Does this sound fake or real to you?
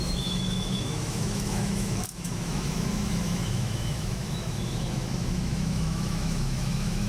fake